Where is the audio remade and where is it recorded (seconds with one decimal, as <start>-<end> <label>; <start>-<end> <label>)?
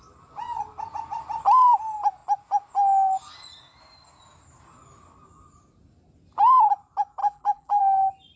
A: 0.0-7.2 recorded; 7.2-7.8 remade; 7.8-8.4 recorded